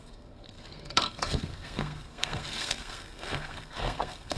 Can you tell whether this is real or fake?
fake